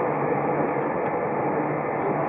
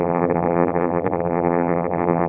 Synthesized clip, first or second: second